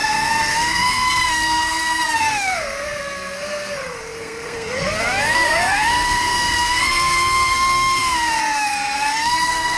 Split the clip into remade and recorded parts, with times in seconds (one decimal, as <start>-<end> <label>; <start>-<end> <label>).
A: 0.0-9.8 remade